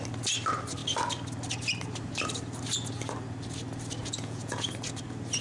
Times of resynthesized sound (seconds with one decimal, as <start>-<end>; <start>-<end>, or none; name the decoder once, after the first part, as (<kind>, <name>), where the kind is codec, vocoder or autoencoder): 4.0-4.7 (vocoder, Vocos)